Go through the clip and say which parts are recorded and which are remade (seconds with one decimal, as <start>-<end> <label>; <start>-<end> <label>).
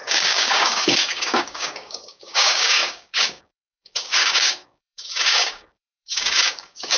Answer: 0.0-7.0 remade